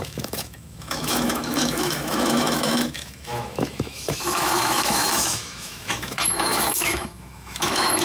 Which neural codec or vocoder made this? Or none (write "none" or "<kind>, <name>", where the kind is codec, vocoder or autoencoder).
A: autoencoder, DAC-VAE